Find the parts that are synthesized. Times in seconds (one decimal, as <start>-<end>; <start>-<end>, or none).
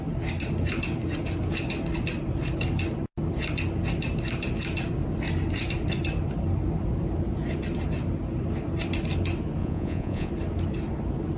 9.6-10.3